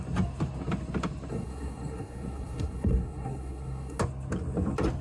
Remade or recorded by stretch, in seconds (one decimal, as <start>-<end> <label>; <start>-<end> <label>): 0.0-1.3 recorded; 1.3-4.0 remade; 4.0-5.0 recorded